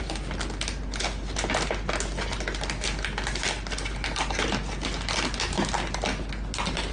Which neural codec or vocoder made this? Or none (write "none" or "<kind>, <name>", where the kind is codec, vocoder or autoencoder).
none